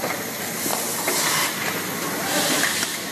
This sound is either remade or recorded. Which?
recorded